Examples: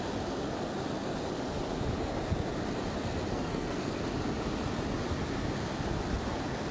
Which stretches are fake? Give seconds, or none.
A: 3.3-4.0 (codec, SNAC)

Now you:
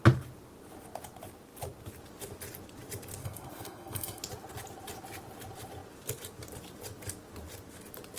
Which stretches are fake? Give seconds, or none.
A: 3.2-4.2 (codec, SNAC)

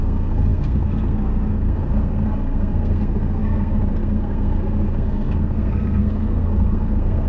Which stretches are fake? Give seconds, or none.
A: 0.0-7.3 (codec, SNAC)

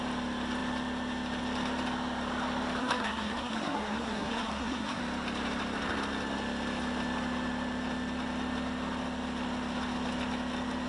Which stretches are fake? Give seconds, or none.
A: 2.8-5.0 (codec, SNAC)

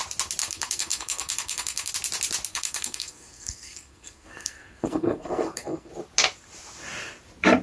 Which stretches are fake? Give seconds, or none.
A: 0.4-1.9 (codec, SNAC); 2.5-5.9

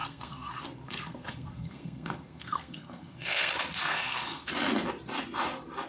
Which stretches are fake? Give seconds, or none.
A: 0.0-3.5 (codec, SNAC); 3.9-4.5

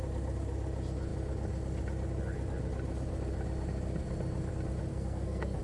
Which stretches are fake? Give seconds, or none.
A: 4.9-5.6 (codec, SNAC)